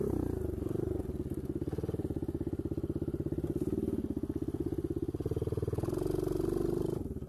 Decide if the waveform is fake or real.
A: real